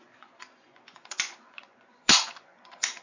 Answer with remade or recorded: remade